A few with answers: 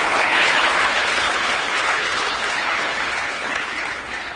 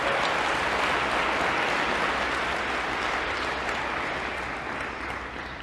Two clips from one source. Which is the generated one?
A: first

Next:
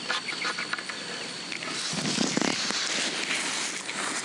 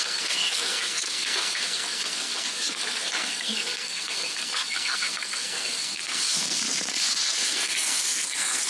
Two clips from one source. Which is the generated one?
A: second